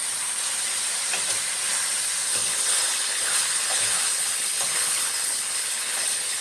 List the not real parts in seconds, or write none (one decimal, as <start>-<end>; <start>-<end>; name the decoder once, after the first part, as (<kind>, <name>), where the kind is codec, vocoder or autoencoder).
2.3-6.4 (codec, HILCodec)